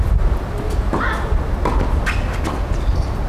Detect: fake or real real